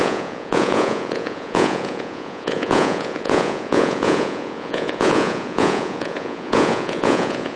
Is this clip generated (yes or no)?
yes